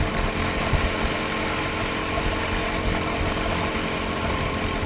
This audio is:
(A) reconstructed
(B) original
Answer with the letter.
B